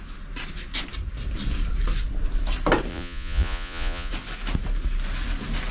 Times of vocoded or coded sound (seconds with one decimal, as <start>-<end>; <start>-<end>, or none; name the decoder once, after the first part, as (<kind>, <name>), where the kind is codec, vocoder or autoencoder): 2.9-4.1 (vocoder, Vocos)